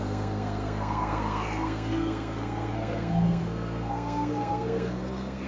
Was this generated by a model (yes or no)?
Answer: yes